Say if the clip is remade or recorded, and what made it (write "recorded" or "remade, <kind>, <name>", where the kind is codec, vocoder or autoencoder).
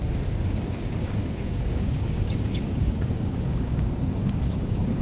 remade, codec, DAC